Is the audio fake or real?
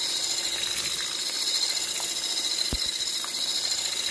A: real